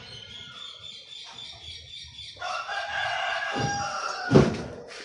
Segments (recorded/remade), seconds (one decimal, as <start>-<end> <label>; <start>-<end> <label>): 0.0-5.0 recorded